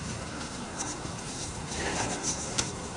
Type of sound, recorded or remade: remade